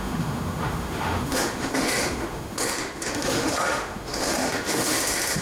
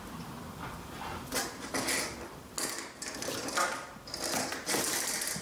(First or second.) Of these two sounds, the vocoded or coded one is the first